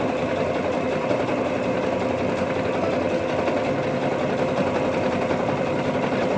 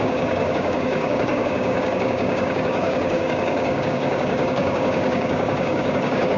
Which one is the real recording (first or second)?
first